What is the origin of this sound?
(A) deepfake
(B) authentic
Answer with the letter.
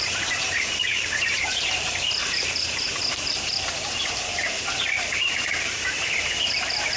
A